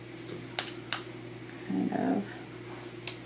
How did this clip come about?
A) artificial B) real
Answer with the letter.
B